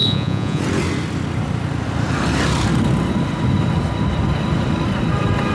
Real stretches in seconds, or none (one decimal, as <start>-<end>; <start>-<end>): 0.6-5.5